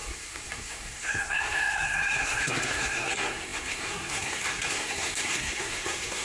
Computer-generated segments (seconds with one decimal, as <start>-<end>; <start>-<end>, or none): 0.0-6.2